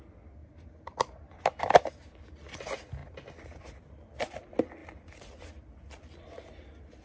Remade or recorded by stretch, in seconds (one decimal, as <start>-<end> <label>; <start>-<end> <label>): 0.0-0.4 recorded; 0.4-1.4 remade; 1.4-7.0 recorded